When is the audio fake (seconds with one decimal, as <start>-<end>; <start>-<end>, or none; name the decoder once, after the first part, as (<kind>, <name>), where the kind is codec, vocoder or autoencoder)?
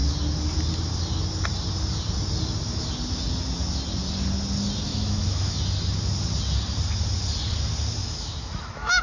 4.9-5.6 (autoencoder, DAC-VAE); 8.0-9.0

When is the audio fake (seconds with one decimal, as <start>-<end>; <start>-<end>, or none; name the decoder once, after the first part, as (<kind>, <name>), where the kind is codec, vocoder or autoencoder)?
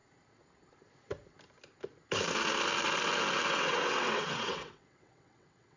3.5-5.8 (vocoder, WaveNeXt)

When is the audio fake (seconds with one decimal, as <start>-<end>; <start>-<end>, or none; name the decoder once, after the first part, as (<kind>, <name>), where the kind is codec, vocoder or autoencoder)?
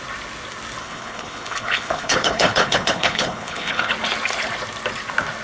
0.8-3.9 (codec, HILCodec)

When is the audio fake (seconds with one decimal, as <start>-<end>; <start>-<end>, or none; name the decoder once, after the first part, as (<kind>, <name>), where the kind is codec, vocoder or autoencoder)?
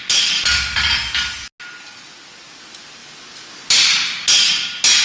none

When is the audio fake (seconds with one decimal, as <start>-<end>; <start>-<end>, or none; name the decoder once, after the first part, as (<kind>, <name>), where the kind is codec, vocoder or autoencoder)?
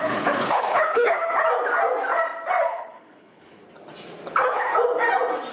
0.0-1.3 (codec, HILCodec); 2.7-3.6; 4.3-4.7